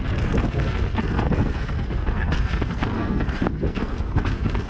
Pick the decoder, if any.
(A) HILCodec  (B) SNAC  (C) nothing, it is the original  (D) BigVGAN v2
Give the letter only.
B